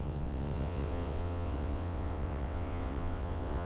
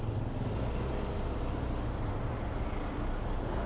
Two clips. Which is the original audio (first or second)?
second